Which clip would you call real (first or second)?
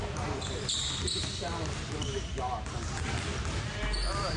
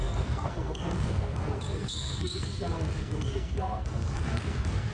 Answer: first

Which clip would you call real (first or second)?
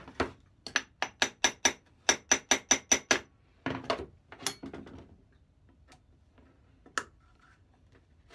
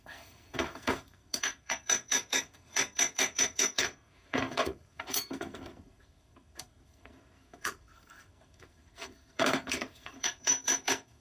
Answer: first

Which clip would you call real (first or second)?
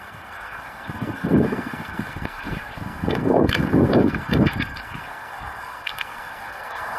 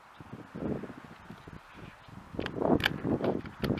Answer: second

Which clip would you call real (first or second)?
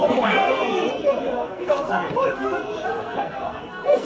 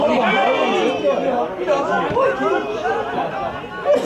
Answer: second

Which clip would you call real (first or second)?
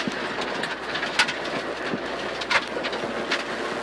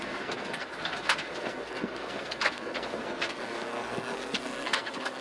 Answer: first